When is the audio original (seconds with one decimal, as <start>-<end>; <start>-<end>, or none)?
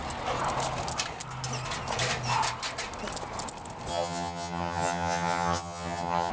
0.0-3.9